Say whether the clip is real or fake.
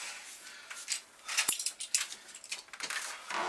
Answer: real